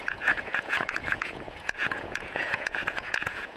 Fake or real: fake